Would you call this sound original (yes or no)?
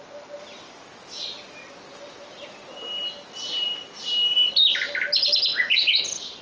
yes